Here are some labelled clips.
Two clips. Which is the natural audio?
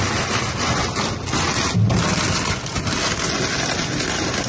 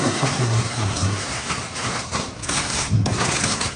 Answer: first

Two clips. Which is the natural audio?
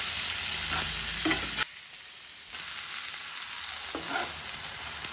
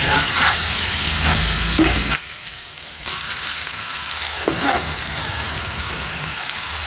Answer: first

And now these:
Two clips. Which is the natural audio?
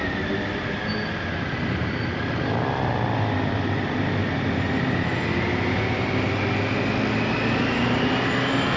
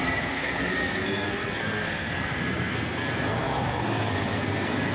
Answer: first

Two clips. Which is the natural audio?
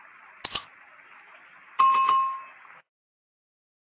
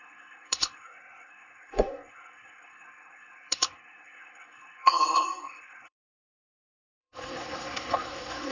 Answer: first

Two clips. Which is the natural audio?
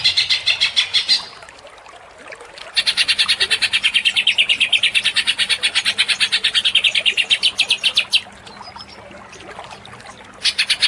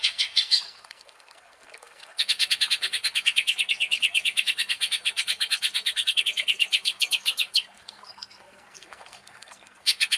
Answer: first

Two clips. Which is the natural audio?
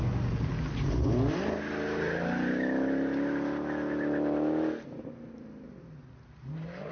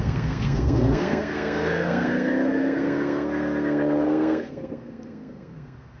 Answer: first